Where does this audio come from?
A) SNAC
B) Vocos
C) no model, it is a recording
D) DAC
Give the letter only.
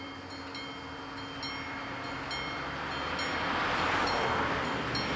C